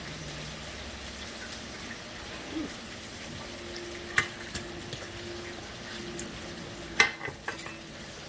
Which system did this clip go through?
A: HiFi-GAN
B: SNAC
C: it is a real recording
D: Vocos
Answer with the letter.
C